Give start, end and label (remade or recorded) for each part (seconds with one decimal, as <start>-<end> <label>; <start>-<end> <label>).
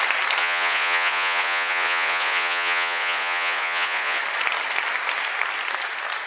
0.0-0.4 recorded; 0.4-4.2 remade; 4.2-6.3 recorded